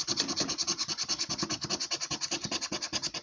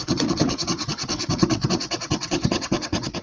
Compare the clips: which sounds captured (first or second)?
first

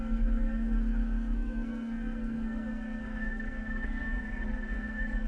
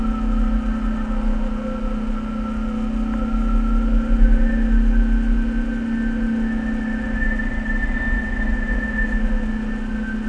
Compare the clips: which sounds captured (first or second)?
second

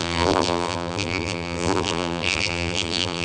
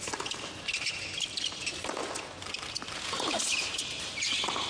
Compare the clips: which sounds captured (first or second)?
second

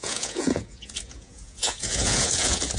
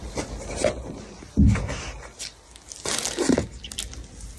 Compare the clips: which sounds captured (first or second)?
second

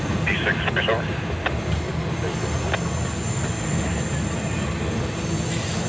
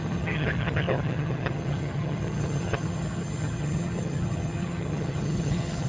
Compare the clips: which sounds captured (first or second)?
first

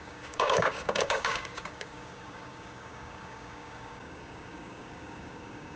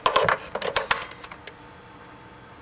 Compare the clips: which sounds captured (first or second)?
second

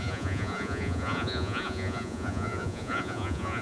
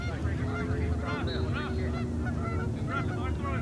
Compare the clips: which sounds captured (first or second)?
second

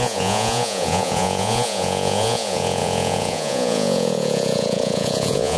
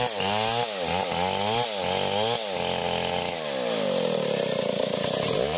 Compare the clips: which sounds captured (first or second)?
second